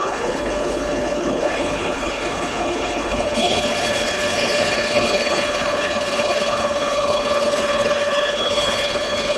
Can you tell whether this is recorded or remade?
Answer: remade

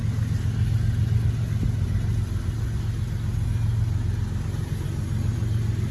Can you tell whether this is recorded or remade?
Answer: recorded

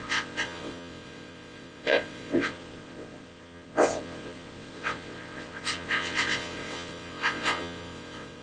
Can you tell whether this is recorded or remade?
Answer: remade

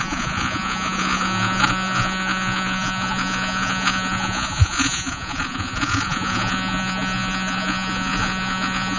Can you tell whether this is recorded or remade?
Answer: remade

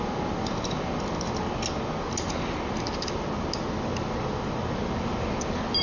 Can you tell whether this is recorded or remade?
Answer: recorded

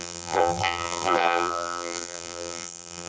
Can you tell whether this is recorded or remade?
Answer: remade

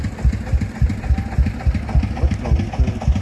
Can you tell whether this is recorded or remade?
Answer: recorded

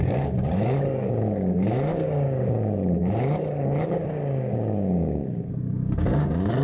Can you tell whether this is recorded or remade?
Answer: remade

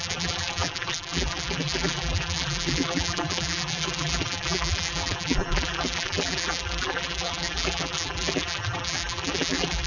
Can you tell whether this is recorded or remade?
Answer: remade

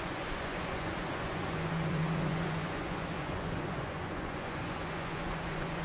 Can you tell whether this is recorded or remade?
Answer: remade